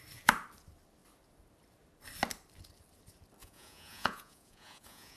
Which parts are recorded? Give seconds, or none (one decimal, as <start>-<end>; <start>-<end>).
0.0-3.4